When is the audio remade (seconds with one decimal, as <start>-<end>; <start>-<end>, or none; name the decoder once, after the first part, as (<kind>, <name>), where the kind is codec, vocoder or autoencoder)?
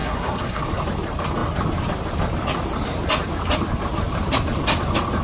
0.0-0.6 (codec, SNAC)